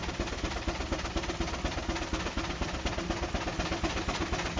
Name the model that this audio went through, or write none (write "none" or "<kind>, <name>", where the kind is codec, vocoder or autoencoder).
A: none